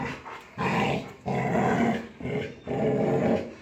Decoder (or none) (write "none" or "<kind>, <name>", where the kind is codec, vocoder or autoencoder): none